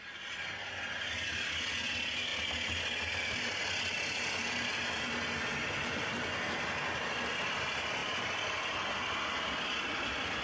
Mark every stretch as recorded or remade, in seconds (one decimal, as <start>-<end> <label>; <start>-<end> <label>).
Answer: 0.0-10.4 recorded